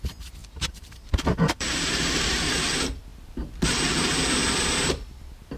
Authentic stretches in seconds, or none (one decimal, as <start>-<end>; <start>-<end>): 0.0-0.4; 2.4-5.6